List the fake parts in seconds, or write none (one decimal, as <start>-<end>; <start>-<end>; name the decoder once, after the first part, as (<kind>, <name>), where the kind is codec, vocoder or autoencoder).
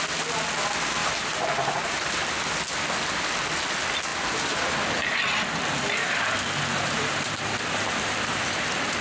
1.0-2.2 (vocoder, BigVGAN v2); 6.7-8.5